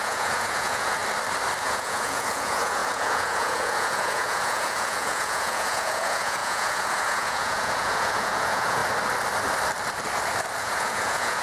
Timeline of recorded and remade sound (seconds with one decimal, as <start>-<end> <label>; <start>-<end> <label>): 0.0-1.0 remade; 1.0-1.6 recorded; 1.6-8.8 remade; 8.8-10.6 recorded; 10.6-11.4 remade